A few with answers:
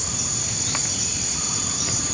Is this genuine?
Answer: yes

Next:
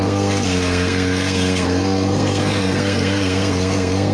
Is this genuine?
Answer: no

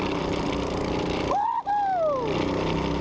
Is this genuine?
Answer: yes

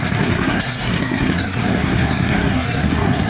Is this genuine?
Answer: no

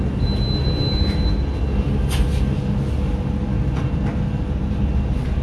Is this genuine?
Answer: yes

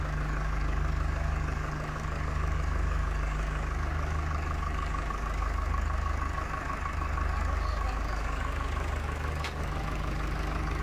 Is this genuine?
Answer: no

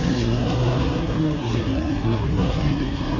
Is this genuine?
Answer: no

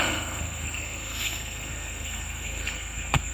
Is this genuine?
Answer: no